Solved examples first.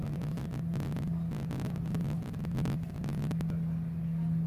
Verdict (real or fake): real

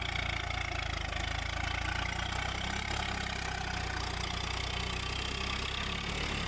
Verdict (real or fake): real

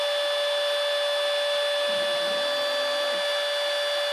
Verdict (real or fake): real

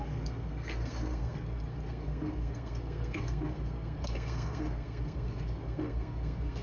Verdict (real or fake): fake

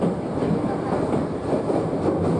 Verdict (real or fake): real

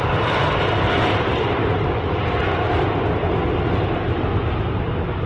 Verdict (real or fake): real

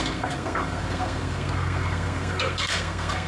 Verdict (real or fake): fake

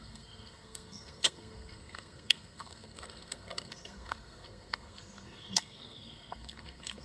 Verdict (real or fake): fake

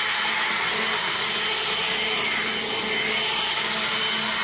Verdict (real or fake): real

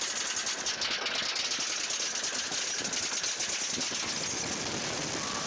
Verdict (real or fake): real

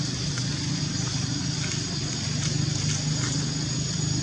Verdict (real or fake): real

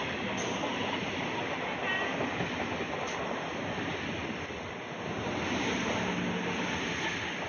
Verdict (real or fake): real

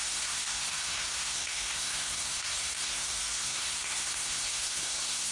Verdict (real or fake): fake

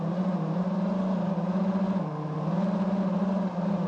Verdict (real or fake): real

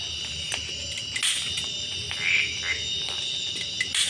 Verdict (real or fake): real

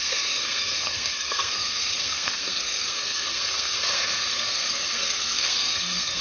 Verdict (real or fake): fake